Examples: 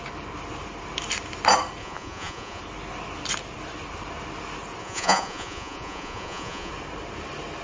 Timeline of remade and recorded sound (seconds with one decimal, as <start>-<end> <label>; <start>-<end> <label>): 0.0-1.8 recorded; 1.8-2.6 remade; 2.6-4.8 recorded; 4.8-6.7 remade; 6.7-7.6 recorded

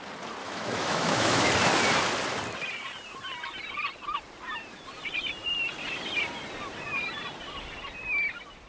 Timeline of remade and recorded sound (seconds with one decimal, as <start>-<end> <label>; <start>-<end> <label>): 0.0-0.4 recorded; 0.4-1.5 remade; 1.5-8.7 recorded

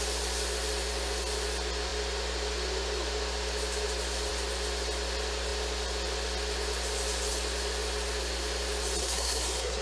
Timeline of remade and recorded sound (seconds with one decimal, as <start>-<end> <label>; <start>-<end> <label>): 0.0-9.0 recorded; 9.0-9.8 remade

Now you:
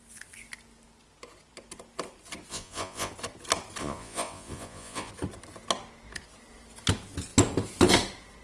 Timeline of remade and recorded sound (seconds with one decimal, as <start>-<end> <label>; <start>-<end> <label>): 0.0-2.5 recorded; 2.5-3.1 remade; 3.1-3.8 recorded; 3.8-5.1 remade; 5.1-8.4 recorded

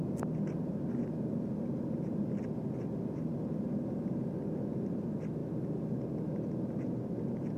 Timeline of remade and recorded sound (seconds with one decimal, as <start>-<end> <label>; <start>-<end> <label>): 0.0-7.6 recorded

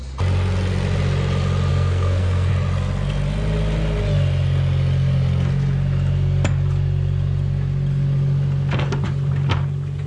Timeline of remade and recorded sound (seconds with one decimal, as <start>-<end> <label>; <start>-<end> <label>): 0.0-1.7 recorded; 1.7-2.5 remade; 2.5-10.1 recorded

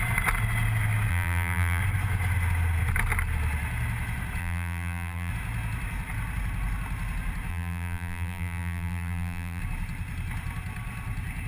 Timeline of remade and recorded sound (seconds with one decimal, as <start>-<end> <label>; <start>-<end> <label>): 0.0-1.1 recorded; 1.1-1.8 remade; 1.8-4.4 recorded; 4.4-5.3 remade; 5.3-7.5 recorded; 7.5-9.6 remade; 9.6-11.5 recorded